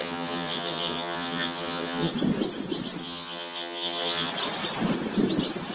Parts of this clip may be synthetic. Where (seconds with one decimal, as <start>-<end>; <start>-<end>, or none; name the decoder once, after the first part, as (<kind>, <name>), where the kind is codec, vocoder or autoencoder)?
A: 0.0-2.1 (vocoder, HiFi-GAN); 3.0-4.3